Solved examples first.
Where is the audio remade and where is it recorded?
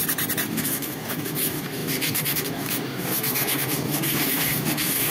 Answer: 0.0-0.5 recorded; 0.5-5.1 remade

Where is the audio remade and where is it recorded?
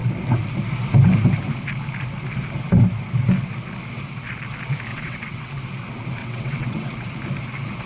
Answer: 0.0-4.9 recorded; 4.9-5.5 remade; 5.5-6.2 recorded; 6.2-6.9 remade; 6.9-7.9 recorded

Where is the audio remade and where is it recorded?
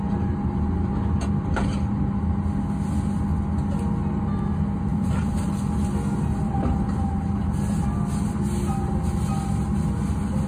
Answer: 0.0-4.9 recorded; 4.9-5.6 remade; 5.6-10.5 recorded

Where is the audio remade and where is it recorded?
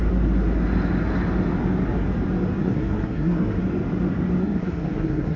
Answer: 0.0-2.6 recorded; 2.6-3.6 remade; 3.6-4.4 recorded; 4.4-5.4 remade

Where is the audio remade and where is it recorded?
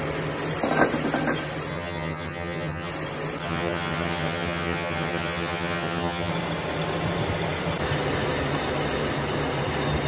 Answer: 0.0-1.7 recorded; 1.7-2.9 remade; 2.9-3.4 recorded; 3.4-6.3 remade; 6.3-10.1 recorded